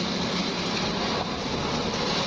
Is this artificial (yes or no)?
no